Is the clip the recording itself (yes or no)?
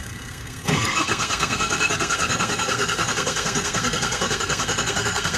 no